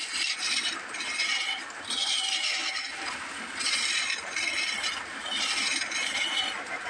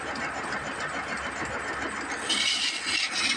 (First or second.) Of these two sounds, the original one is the second